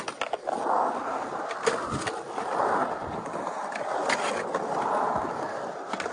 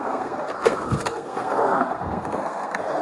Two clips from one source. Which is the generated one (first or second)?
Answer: second